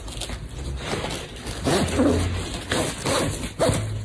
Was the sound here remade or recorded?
recorded